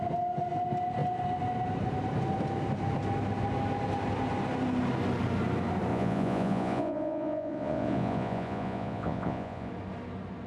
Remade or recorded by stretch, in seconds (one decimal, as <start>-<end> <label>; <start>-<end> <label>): 0.0-5.9 recorded; 5.9-9.7 remade; 9.7-10.5 recorded